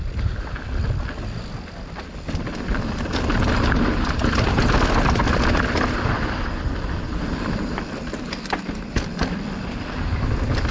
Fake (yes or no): no